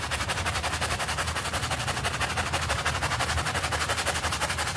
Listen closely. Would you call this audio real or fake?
fake